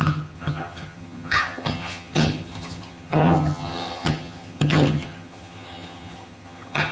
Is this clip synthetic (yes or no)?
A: yes